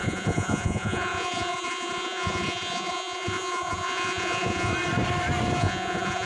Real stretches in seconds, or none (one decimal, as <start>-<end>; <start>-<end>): 4.7-5.6

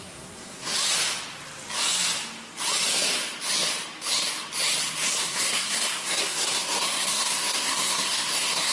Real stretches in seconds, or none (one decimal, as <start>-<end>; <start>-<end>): 0.7-5.2

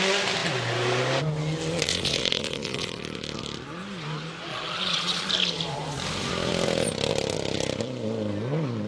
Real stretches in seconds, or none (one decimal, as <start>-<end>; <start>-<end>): 0.0-1.9; 3.0-4.5; 5.3-8.9

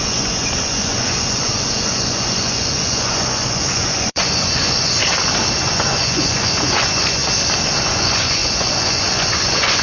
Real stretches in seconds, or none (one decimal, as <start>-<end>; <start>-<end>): 5.0-5.6; 7.2-7.8

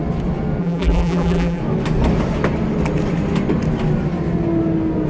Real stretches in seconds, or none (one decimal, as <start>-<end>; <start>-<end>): 0.0-0.6; 1.6-5.1

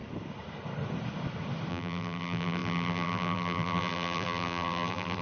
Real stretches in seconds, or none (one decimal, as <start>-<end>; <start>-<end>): 0.0-1.7

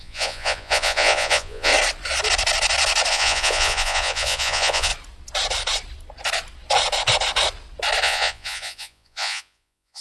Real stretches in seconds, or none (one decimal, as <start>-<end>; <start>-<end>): 1.7-3.1; 4.9-8.0

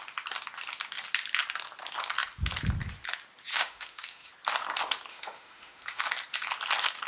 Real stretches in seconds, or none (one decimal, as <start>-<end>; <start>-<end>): 0.0-3.5; 4.3-5.1; 6.0-7.1